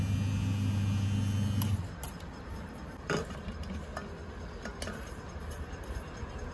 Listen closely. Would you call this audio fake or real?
real